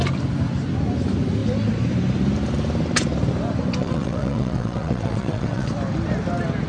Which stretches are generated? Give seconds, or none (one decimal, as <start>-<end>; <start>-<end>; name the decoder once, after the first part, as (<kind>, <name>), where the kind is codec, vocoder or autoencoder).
3.8-5.7 (vocoder, WaveNeXt)